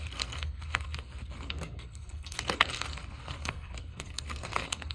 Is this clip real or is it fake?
fake